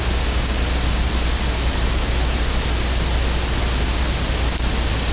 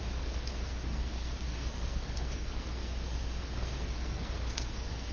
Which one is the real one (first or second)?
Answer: first